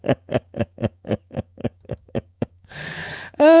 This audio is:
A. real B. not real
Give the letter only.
B